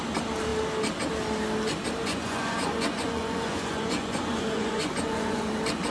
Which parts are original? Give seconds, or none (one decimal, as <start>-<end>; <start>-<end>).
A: 0.0-2.0; 5.5-5.9